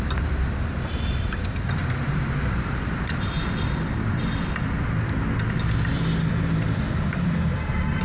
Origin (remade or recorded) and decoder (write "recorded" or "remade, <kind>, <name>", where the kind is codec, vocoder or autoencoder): remade, vocoder, BigVGAN v2